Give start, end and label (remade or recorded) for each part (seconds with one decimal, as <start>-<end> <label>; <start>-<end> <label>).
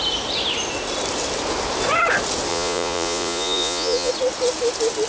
0.0-2.5 recorded; 2.5-4.1 remade; 4.1-5.1 recorded